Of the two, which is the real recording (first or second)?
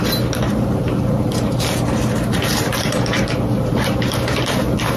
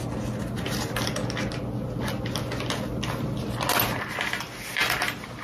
second